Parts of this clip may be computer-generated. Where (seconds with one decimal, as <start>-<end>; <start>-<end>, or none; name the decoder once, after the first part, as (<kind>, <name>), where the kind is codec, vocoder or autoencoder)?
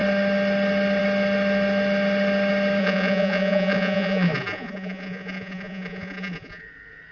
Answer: 2.8-6.6 (vocoder, Vocos)